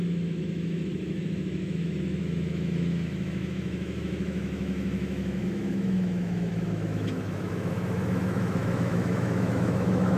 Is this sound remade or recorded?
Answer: remade